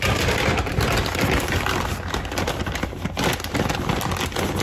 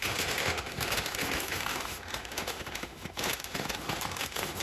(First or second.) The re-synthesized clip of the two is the second